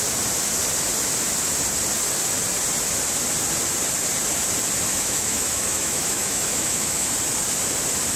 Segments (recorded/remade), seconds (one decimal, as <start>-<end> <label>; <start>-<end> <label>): 0.0-4.9 recorded; 4.9-7.1 remade; 7.1-8.2 recorded